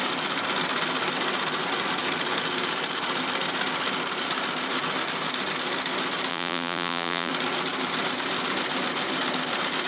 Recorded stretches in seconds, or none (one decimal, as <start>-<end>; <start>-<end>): 0.0-6.3; 7.3-9.9